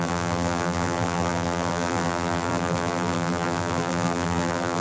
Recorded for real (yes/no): no